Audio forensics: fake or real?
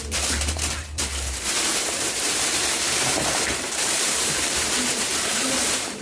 fake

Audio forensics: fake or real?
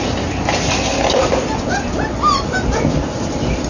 real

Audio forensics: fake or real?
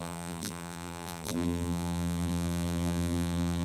fake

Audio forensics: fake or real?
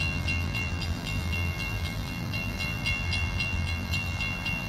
fake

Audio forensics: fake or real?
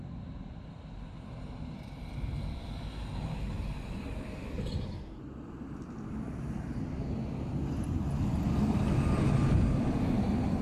real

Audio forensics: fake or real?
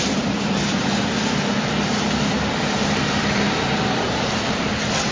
fake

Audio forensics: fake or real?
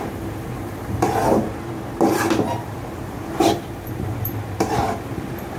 fake